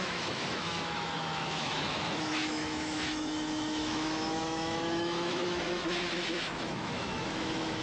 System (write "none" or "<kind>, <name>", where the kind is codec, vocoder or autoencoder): autoencoder, DAC-VAE